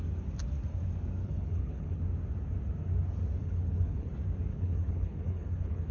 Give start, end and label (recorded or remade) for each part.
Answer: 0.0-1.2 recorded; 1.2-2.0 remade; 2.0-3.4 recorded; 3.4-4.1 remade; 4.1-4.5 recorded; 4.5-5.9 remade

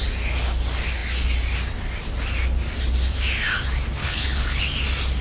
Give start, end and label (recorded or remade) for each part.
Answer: 0.0-4.0 recorded; 4.0-4.6 remade; 4.6-5.2 recorded

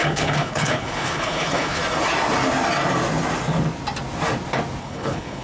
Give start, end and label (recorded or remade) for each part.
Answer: 0.0-1.8 remade; 1.8-4.8 recorded; 4.8-5.4 remade

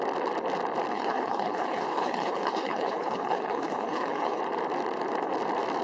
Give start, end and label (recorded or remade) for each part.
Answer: 0.0-0.9 recorded; 0.9-4.4 remade; 4.4-5.8 recorded

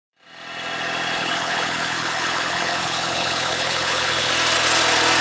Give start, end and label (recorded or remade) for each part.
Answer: 0.0-1.2 recorded; 1.2-4.3 remade; 4.3-5.2 recorded

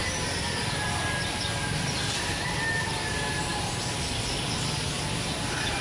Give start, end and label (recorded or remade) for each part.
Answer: 0.0-5.8 recorded

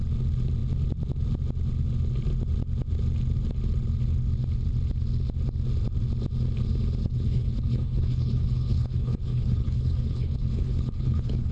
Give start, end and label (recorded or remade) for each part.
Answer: 0.0-7.0 recorded; 7.0-11.5 remade

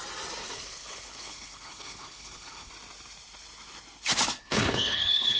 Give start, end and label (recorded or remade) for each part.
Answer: 0.0-0.4 recorded; 0.4-2.7 remade; 2.7-4.4 recorded; 4.4-5.4 remade